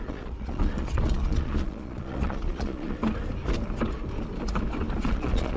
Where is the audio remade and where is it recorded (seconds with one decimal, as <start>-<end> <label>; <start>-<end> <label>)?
0.0-3.0 remade; 3.0-5.0 recorded; 5.0-5.6 remade